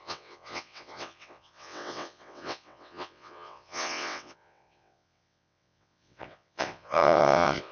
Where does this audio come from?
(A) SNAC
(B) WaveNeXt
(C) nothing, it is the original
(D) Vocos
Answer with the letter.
B